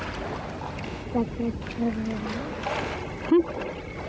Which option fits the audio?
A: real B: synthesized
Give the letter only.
A